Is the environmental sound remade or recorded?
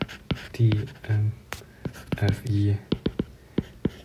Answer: recorded